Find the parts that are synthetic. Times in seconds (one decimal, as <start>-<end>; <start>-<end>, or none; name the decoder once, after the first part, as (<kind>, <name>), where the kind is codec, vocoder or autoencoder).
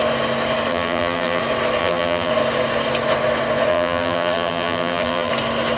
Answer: 0.7-1.4 (vocoder, BigVGAN v2); 1.8-2.3; 3.7-5.3